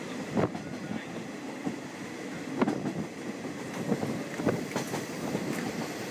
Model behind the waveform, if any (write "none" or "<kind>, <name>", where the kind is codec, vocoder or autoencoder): none